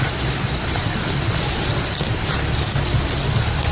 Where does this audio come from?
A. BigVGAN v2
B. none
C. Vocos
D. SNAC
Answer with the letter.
B